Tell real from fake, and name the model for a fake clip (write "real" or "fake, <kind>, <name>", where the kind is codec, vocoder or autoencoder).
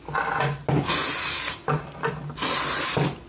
real